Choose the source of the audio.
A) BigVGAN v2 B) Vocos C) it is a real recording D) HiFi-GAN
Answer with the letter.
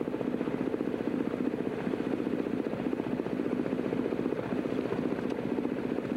C